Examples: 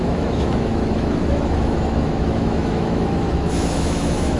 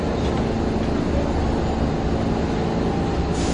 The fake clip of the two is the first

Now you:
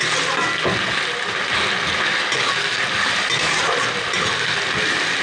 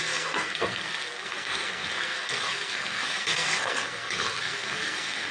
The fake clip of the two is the second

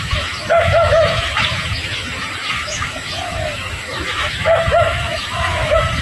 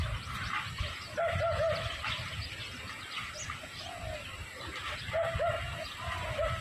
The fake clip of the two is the first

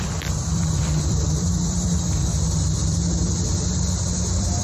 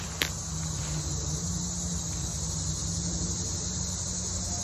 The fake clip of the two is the first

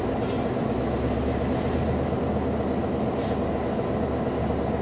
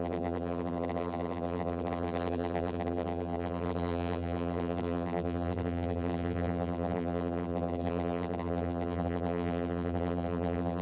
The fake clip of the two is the second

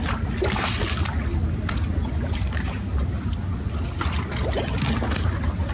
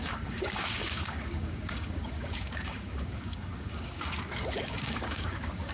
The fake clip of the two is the second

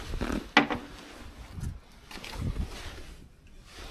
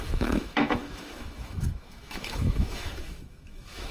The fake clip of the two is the second